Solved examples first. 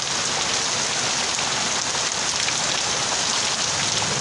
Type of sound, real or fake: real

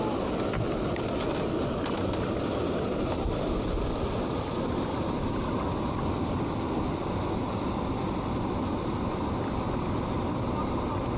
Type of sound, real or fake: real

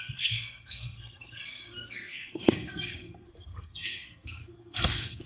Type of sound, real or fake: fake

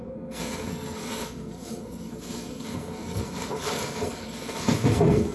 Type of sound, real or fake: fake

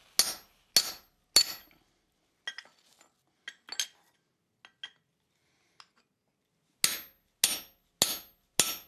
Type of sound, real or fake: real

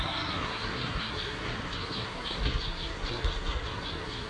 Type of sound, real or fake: fake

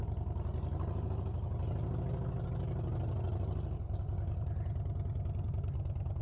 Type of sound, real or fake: real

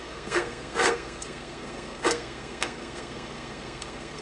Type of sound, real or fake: fake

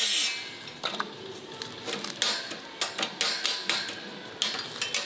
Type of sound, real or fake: real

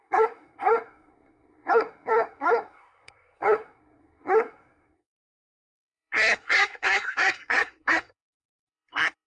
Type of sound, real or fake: fake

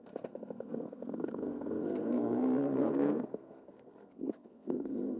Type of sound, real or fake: fake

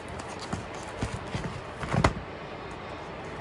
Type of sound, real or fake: real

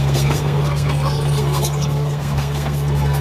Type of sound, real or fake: fake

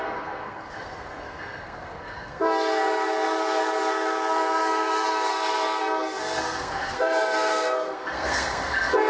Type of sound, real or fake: fake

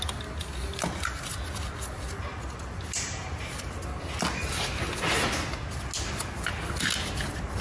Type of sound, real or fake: real